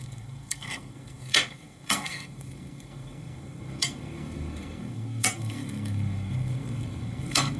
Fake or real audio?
fake